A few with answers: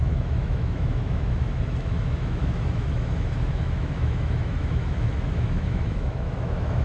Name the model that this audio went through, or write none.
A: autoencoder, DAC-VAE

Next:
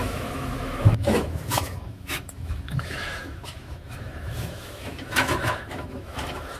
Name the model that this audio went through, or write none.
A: autoencoder, DAC-VAE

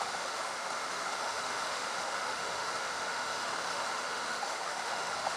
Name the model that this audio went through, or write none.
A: autoencoder, DAC-VAE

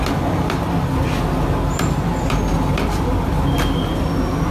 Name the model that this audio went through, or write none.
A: none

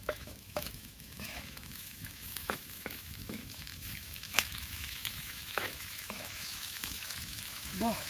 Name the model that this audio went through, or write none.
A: autoencoder, DAC-VAE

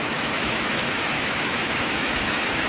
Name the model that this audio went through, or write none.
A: autoencoder, DAC-VAE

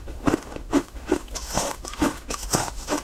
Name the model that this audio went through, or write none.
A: autoencoder, DAC-VAE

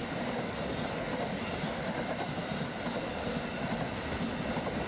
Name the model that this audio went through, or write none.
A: none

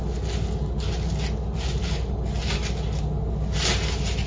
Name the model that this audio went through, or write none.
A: none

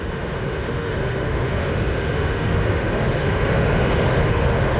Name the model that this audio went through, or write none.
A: autoencoder, DAC-VAE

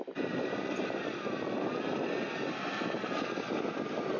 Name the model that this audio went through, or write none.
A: none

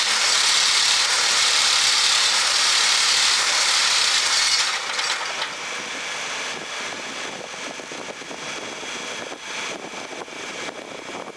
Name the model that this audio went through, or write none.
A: none